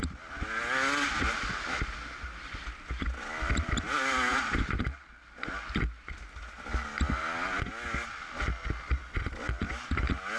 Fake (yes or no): no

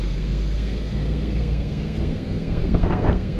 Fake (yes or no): yes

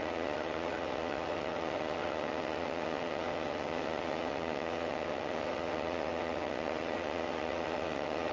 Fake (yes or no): yes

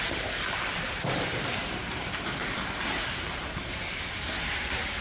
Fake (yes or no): yes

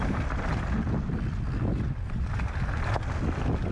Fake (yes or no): no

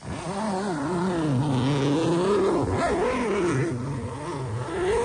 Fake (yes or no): no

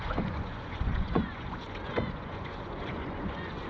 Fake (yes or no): yes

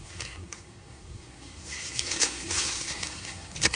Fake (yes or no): yes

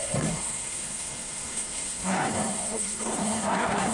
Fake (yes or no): yes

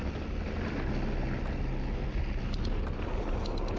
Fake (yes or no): no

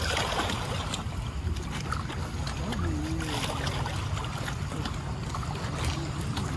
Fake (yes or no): no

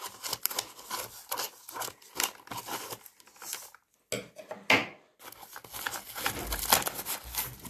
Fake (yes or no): no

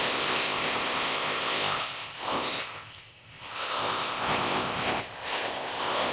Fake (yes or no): yes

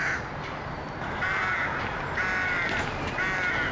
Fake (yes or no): no